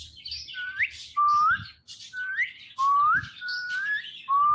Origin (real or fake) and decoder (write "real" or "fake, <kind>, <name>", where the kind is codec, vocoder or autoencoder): real